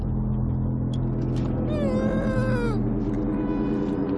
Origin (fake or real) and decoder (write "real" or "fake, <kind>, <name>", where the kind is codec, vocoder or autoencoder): real